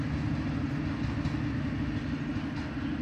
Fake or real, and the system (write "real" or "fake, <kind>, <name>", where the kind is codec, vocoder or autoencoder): real